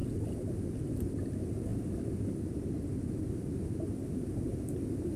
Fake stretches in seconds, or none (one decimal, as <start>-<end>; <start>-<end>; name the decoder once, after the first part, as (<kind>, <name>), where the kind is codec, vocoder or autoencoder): none